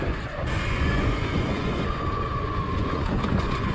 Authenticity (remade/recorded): remade